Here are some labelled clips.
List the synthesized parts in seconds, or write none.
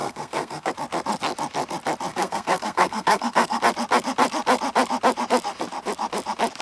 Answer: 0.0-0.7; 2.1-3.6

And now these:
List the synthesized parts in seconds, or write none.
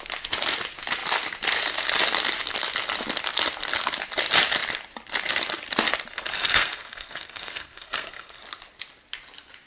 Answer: 6.3-8.4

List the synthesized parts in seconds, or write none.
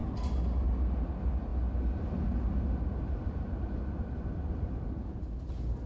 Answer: none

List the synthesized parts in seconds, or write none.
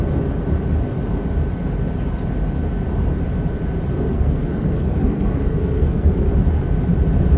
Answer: 4.1-6.3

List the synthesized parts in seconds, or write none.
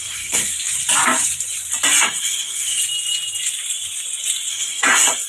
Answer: 0.0-0.5; 2.0-2.8; 4.5-5.3